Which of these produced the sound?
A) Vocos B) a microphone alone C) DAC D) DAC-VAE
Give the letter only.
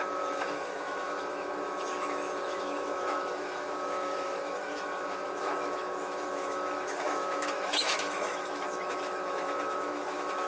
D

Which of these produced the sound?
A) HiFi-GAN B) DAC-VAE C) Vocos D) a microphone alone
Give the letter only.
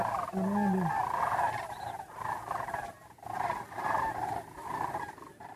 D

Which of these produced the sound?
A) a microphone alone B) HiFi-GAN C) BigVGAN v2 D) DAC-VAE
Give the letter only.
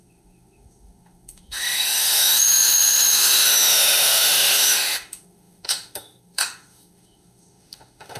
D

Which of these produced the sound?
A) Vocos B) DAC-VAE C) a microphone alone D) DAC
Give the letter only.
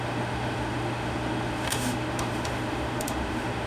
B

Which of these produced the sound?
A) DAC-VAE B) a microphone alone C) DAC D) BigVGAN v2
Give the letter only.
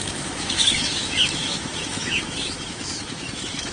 A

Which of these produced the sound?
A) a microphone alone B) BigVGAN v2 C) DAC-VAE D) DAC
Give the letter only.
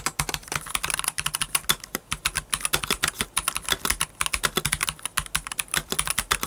A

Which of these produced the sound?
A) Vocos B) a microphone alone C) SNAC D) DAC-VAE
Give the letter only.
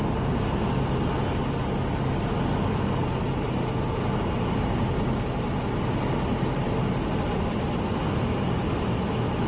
B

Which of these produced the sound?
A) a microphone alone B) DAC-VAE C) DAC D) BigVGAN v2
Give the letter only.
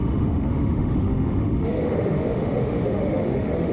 B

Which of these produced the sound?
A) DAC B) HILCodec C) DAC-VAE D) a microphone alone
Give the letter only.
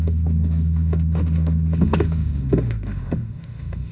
C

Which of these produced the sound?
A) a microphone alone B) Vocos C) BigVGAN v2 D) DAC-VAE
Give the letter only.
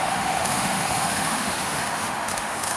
D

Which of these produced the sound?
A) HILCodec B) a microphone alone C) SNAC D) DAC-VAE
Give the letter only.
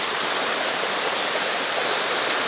B